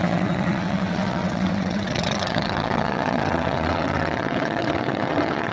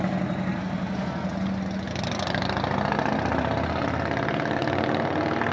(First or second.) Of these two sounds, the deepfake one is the first